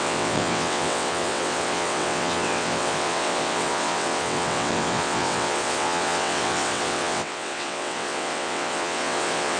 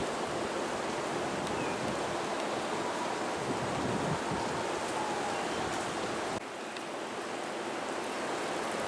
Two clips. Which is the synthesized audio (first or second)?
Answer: first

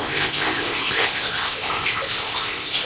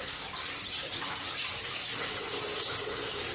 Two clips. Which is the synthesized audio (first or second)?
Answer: first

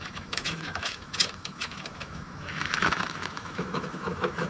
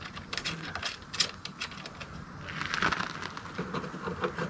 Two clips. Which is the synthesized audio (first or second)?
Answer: first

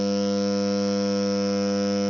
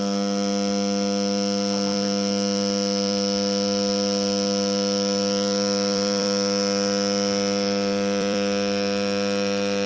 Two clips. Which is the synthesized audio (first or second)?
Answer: second